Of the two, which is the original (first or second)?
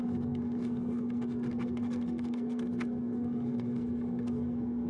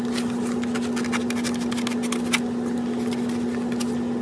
second